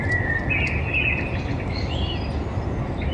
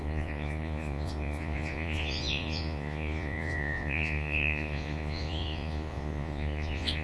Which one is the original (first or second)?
first